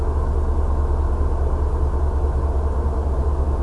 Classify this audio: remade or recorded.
recorded